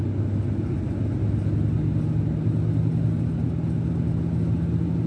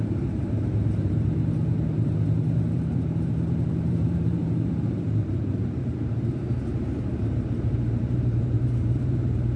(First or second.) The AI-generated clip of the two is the second